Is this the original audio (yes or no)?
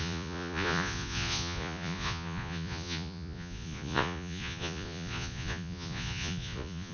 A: no